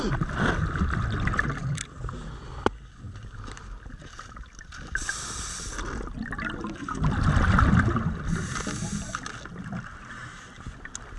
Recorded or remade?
recorded